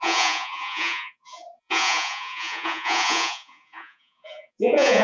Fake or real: fake